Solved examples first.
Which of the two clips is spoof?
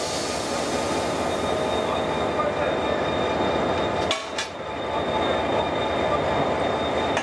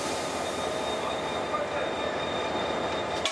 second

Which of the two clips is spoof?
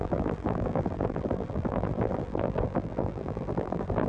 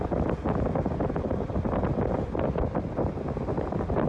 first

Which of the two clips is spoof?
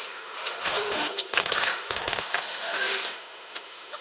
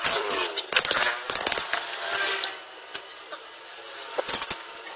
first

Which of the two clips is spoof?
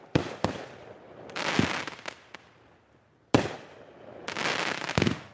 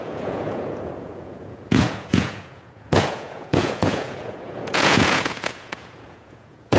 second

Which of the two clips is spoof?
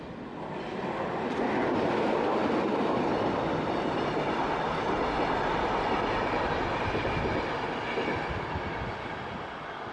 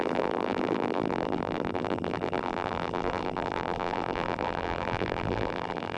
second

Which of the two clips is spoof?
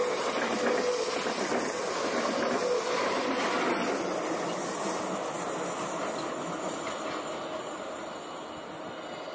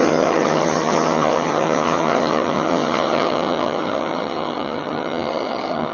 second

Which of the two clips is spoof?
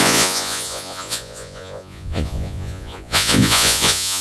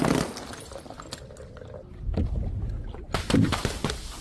first